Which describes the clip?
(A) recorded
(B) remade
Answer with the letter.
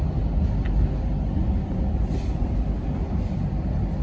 B